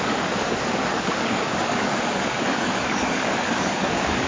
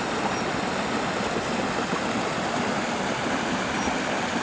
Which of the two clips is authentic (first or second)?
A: second